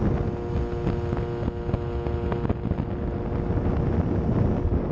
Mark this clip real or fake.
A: real